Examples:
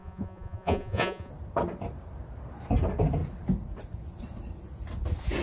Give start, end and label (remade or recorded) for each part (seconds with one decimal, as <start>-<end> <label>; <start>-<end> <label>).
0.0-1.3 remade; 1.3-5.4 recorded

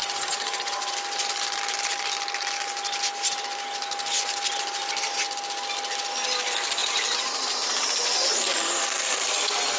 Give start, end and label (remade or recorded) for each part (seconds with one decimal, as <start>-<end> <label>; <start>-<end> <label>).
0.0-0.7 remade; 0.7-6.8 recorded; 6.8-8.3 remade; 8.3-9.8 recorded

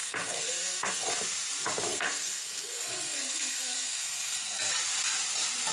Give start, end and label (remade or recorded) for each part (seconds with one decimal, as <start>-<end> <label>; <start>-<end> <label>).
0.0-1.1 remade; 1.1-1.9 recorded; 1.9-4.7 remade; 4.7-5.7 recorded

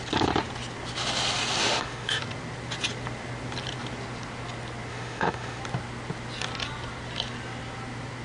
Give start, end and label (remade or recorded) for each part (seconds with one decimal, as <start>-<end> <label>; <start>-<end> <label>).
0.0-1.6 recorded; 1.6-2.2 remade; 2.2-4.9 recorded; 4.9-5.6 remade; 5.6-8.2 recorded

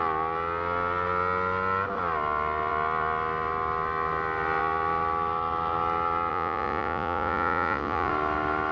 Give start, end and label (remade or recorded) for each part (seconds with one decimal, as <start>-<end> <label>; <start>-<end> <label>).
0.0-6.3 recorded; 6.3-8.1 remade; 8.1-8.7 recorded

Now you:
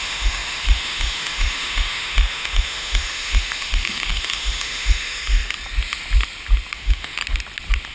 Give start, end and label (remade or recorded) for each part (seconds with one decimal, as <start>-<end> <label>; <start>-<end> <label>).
0.0-5.4 remade; 5.4-6.7 recorded; 6.7-7.2 remade; 7.2-7.9 recorded

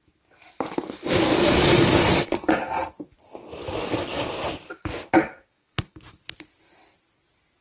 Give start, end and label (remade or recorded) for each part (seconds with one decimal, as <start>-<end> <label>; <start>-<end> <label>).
0.0-1.3 recorded; 1.3-2.5 remade; 2.5-3.6 recorded; 3.6-4.3 remade; 4.3-5.3 recorded; 5.3-6.0 remade; 6.0-7.6 recorded

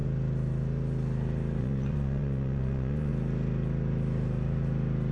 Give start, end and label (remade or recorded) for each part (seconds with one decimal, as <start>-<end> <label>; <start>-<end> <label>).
0.0-1.6 recorded; 1.6-3.1 remade; 3.1-5.1 recorded